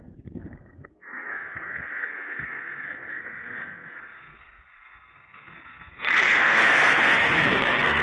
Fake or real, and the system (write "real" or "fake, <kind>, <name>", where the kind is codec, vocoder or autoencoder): fake, codec, SNAC